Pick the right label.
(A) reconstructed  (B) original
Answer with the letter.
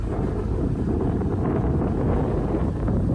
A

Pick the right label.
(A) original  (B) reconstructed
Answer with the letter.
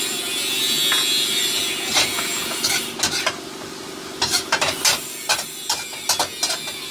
A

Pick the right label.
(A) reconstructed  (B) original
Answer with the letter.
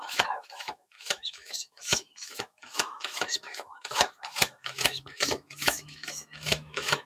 A